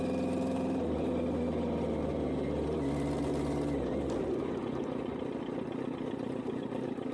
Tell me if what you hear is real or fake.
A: real